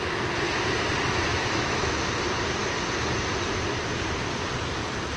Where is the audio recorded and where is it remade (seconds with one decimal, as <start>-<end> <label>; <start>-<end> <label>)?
0.0-1.3 recorded; 1.3-2.0 remade; 2.0-5.2 recorded